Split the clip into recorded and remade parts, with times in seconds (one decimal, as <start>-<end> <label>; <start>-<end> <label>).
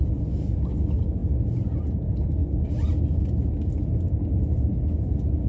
0.0-5.5 recorded